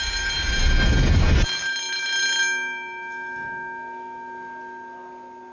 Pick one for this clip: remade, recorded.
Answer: recorded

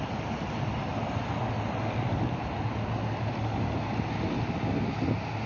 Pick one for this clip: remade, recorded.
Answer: recorded